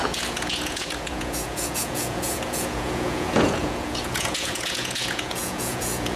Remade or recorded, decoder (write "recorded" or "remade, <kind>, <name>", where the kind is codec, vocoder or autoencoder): remade, vocoder, Vocos